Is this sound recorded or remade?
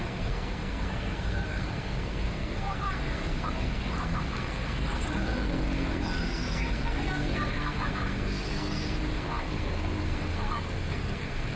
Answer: remade